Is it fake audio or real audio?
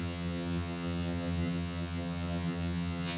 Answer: fake